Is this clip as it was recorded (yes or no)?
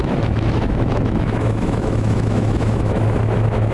no